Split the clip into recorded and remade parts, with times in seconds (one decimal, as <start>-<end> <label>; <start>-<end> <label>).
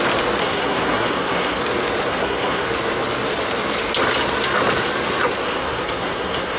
0.0-0.4 recorded; 0.4-1.6 remade; 1.6-2.1 recorded; 2.1-2.7 remade; 2.7-5.4 recorded; 5.4-6.6 remade